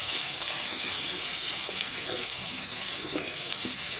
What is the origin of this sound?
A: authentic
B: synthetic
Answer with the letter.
B